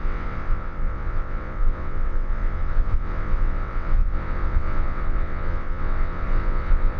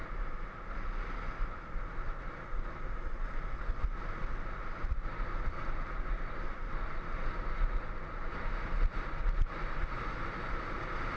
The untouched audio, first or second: second